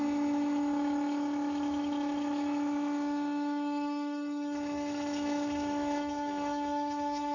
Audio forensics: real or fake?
fake